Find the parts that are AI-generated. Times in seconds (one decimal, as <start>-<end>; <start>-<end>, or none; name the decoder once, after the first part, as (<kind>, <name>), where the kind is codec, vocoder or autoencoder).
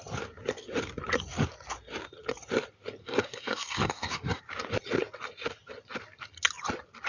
3.0-4.4 (codec, SNAC)